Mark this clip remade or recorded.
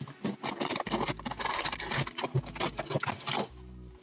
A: recorded